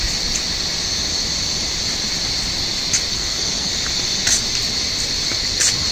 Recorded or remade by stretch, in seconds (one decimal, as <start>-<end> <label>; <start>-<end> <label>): 0.0-3.1 recorded; 3.1-3.7 remade; 3.7-5.9 recorded